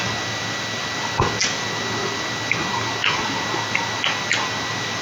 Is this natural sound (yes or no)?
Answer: yes